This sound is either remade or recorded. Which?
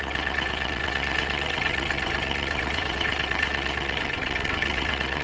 remade